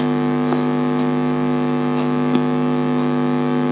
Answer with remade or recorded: remade